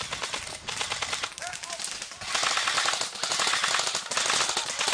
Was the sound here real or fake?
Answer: real